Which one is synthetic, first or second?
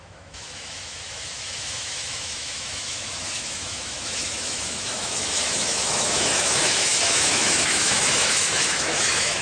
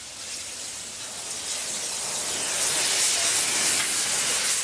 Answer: first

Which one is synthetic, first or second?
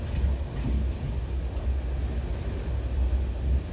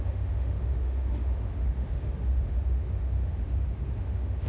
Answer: second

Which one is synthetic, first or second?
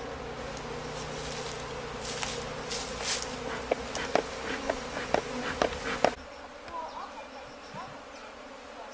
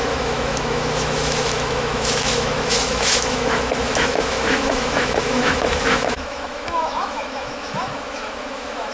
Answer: second